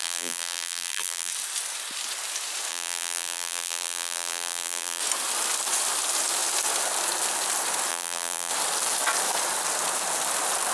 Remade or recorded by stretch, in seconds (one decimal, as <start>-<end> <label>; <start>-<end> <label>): 0.0-1.3 remade; 1.3-2.7 recorded; 2.7-5.0 remade; 5.0-7.9 recorded; 7.9-8.5 remade; 8.5-10.7 recorded